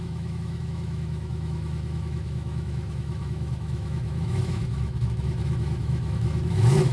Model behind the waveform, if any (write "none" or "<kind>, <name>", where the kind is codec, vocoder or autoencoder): autoencoder, DAC-VAE